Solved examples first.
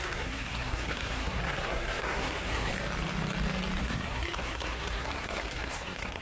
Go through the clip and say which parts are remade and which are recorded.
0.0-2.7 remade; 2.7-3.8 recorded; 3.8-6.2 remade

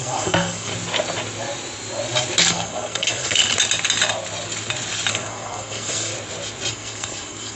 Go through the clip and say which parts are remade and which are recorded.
0.0-0.7 remade; 0.7-2.4 recorded; 2.4-3.4 remade; 3.4-5.1 recorded; 5.1-6.1 remade; 6.1-6.7 recorded; 6.7-7.6 remade

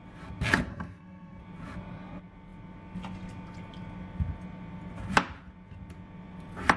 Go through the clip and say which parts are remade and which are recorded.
0.0-0.7 recorded; 0.7-1.4 remade; 1.4-6.8 recorded

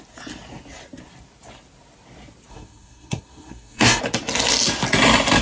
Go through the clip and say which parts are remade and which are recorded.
0.0-2.5 recorded; 2.5-4.0 remade; 4.0-5.4 recorded

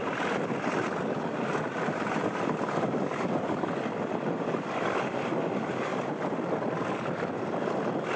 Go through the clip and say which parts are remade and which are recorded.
0.0-8.2 recorded

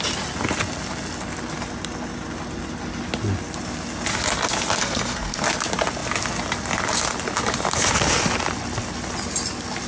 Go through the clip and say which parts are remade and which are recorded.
0.0-4.8 recorded; 4.8-5.4 remade; 5.4-9.9 recorded

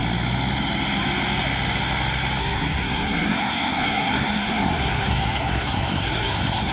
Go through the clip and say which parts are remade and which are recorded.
0.0-2.4 recorded; 2.4-6.7 remade

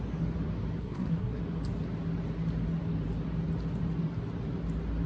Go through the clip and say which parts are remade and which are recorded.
0.0-0.8 recorded; 0.8-1.4 remade; 1.4-5.1 recorded